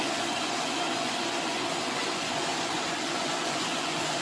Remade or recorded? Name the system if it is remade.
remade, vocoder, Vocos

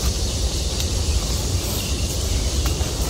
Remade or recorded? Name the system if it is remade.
recorded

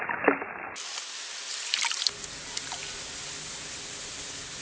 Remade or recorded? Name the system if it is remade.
recorded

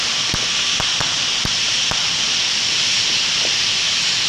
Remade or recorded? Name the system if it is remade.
recorded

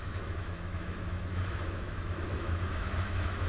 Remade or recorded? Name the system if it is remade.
remade, autoencoder, DAC-VAE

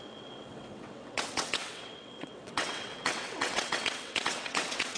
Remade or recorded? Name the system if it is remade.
remade, vocoder, WaveNeXt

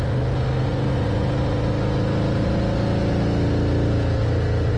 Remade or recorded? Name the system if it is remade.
recorded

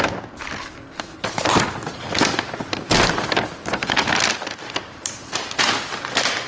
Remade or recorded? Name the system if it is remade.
recorded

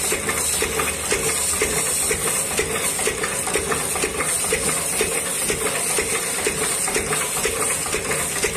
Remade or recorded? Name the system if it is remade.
recorded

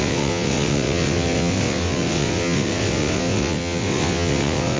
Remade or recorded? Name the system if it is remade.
remade, vocoder, WaveNeXt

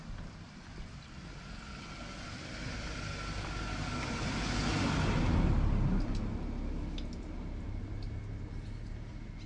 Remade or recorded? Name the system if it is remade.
recorded